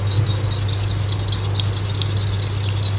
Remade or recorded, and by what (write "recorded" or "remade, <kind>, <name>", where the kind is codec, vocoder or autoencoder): recorded